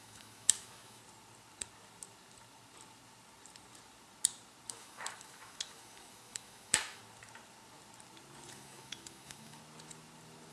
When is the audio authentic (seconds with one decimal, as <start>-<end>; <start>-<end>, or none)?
1.0-4.7; 7.0-8.5; 9.6-10.5